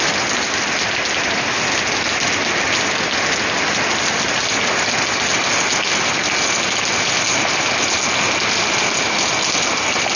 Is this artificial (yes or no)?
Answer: no